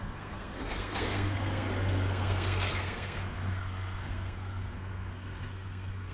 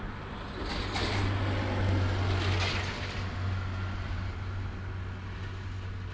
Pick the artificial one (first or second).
first